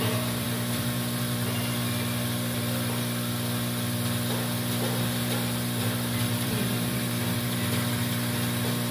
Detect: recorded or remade remade